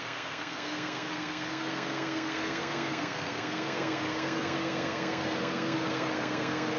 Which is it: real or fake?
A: fake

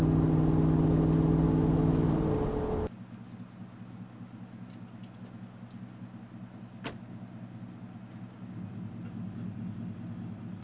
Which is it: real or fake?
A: real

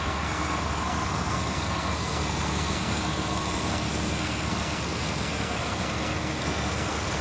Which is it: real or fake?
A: fake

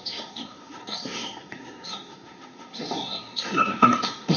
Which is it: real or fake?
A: fake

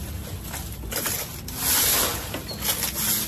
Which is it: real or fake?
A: real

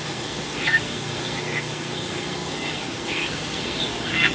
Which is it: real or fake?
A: fake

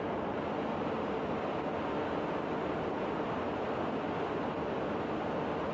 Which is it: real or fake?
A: real